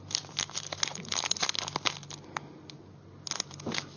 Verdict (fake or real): real